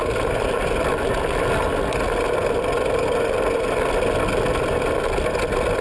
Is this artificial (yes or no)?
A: no